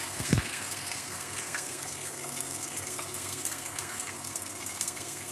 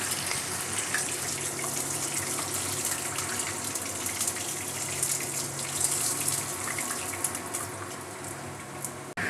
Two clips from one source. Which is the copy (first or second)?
first